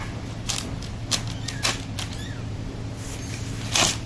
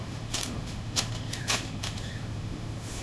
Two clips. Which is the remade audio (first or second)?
second